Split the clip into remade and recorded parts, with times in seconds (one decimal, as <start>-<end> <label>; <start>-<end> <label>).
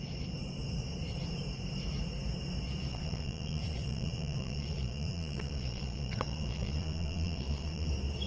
0.0-2.9 recorded; 2.9-7.9 remade; 7.9-8.3 recorded